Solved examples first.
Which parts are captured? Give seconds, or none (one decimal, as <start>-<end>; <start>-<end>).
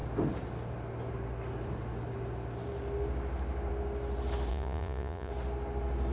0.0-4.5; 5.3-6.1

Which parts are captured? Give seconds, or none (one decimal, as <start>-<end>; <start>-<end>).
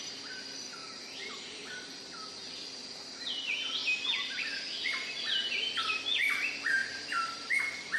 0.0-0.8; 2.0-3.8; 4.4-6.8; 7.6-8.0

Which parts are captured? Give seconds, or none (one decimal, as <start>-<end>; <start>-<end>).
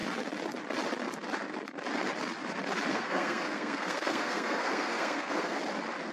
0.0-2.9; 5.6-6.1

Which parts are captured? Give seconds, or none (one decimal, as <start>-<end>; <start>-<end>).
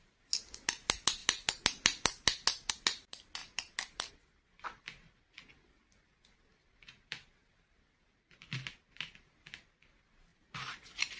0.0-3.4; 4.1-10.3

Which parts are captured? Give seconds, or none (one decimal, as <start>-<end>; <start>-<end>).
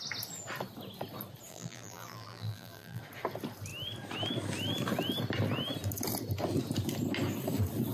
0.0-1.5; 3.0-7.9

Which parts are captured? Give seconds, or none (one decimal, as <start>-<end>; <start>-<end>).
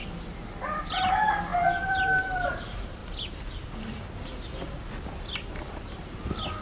0.0-0.7; 3.0-5.9